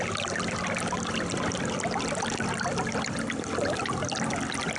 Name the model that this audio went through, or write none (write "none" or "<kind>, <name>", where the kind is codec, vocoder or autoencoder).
none